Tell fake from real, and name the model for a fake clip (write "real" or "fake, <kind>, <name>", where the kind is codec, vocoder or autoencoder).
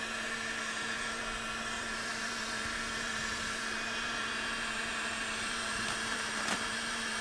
fake, vocoder, BigVGAN v2